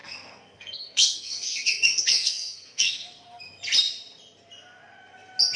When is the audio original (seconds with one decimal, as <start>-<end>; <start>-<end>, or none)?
3.4-5.6